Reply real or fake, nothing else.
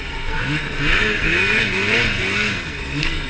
fake